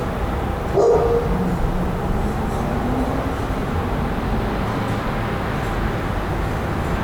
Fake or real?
real